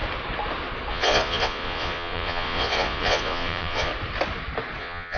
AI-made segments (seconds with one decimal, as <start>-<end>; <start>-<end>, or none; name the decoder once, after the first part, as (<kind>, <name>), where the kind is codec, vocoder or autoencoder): 0.9-3.9 (vocoder, Vocos); 4.8-5.2

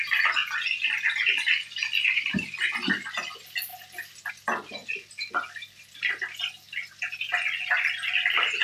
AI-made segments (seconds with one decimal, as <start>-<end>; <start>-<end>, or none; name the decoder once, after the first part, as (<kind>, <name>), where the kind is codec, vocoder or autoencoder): none

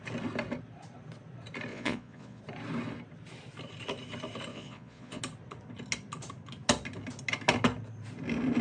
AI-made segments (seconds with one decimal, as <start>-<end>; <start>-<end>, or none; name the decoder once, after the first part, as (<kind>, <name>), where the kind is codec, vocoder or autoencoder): 1.7-2.4 (vocoder, Vocos); 4.5-5.2

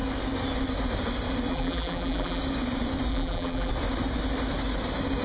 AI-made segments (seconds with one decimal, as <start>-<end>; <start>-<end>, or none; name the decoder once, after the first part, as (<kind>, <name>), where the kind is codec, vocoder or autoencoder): 1.5-2.4 (vocoder, BigVGAN v2); 3.1-3.7

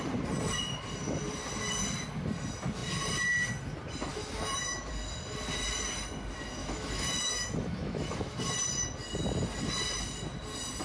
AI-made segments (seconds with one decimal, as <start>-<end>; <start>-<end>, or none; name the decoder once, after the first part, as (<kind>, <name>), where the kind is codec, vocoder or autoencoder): 4.1-4.9 (autoencoder, DAC-VAE); 6.6-8.4

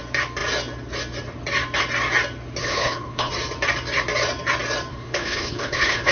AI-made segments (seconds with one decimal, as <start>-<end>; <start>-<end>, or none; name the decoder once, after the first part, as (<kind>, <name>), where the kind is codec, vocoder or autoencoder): 2.6-3.3 (codec, HILCodec); 4.9-6.1

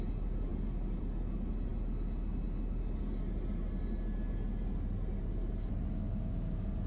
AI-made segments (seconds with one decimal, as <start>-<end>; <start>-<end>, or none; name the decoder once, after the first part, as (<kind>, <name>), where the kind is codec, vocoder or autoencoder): none

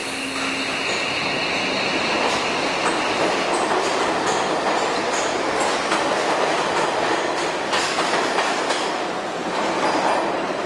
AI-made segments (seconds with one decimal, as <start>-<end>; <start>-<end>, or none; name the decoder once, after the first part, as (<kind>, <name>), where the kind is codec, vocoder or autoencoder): none